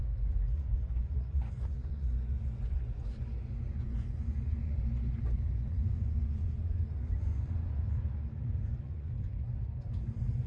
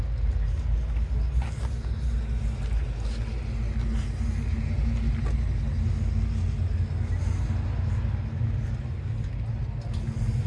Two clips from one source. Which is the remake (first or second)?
first